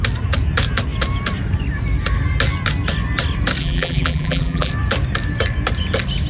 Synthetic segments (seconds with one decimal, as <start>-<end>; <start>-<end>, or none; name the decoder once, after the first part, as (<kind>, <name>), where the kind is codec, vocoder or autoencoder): 3.6-4.7 (vocoder, BigVGAN v2)